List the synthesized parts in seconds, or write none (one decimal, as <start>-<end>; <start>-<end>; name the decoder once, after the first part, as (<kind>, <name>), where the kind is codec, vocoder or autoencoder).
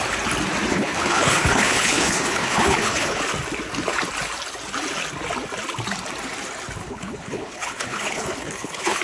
0.7-3.2 (codec, HILCodec); 6.8-9.0